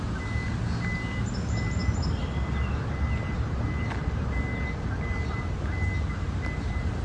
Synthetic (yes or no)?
no